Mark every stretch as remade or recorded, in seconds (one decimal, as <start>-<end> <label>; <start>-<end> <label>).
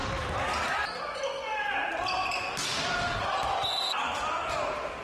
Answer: 0.0-3.6 recorded; 3.6-4.4 remade; 4.4-5.0 recorded